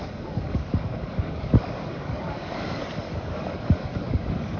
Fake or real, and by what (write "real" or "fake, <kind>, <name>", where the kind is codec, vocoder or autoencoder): fake, codec, DAC